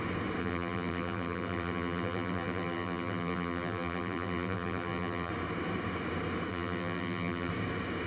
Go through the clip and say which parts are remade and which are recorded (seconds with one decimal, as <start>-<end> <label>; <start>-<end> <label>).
0.0-0.4 recorded; 0.4-5.3 remade; 5.3-6.5 recorded; 6.5-7.5 remade; 7.5-8.1 recorded